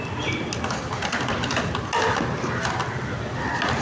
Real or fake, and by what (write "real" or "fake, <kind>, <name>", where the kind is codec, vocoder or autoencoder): real